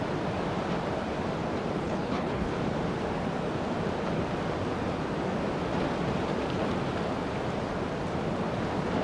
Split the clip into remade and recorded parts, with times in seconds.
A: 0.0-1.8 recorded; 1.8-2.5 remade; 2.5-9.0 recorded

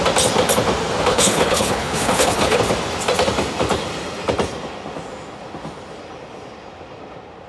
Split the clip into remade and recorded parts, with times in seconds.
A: 0.0-1.1 recorded; 1.1-2.6 remade; 2.6-7.5 recorded

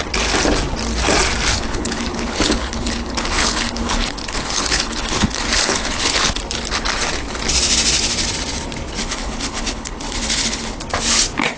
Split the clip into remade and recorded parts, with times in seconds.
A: 0.0-1.5 recorded; 1.5-6.4 remade; 6.4-9.0 recorded; 9.0-10.8 remade; 10.8-11.6 recorded